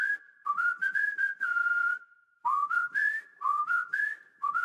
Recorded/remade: recorded